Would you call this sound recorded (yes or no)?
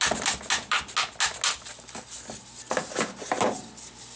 yes